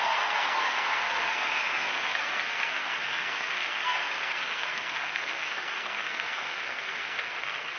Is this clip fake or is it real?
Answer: fake